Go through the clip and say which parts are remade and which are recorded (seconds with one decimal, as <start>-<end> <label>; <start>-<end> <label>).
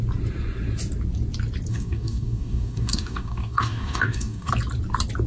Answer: 0.0-1.7 recorded; 1.7-4.5 remade; 4.5-5.3 recorded